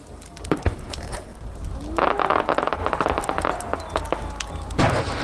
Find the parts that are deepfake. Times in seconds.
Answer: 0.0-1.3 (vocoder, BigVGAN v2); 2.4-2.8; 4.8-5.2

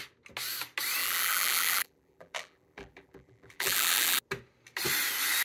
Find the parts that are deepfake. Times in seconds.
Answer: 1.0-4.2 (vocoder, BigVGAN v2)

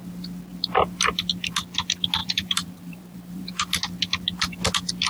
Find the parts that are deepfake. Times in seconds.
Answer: 2.2-3.5 (vocoder, BigVGAN v2)

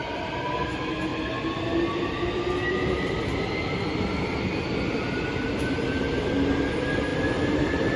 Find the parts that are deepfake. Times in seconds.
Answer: 7.1-8.0 (vocoder, BigVGAN v2)

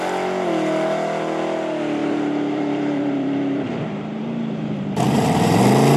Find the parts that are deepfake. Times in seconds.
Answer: 2.0-5.6 (vocoder, BigVGAN v2)

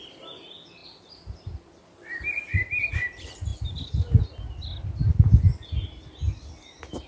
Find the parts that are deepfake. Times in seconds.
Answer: 0.8-2.9 (vocoder, BigVGAN v2); 3.5-4.2

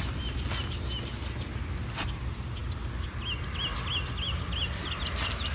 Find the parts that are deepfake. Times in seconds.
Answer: none